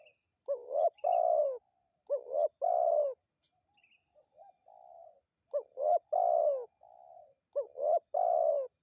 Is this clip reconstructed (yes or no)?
no